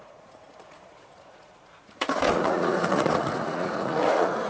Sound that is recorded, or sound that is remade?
remade